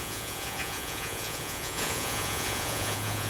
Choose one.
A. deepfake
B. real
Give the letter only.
A